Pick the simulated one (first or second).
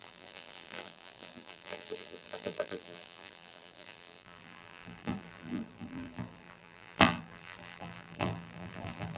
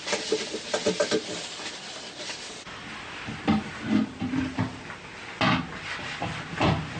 first